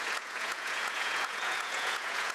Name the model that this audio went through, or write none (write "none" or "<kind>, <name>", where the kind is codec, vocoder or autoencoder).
vocoder, Vocos